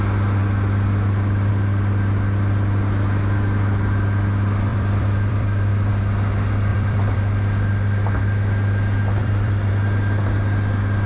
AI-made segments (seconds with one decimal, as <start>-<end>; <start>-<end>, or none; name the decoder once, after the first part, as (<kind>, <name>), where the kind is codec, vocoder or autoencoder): 4.7-5.9 (vocoder, BigVGAN v2); 6.7-7.2; 9.2-9.7